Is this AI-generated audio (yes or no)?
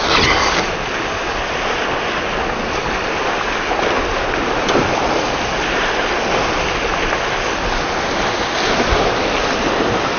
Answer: no